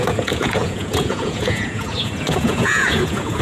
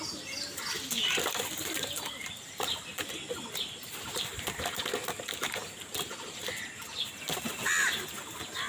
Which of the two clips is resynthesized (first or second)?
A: first